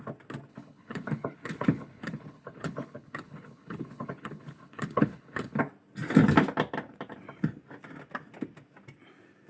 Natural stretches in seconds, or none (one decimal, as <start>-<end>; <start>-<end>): 0.0-0.5; 5.6-9.5